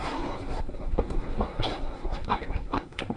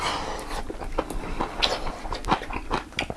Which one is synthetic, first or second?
first